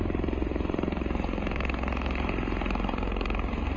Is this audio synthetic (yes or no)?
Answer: yes